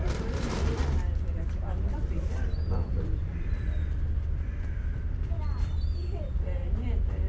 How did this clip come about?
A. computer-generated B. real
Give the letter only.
A